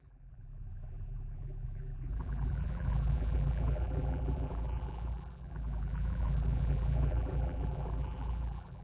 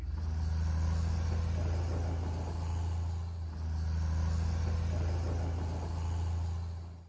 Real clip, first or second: second